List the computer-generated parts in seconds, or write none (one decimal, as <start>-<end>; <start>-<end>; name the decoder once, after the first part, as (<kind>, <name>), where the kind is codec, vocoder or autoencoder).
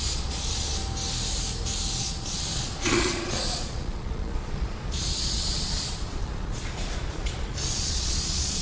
0.0-0.8 (vocoder, Vocos); 2.0-8.6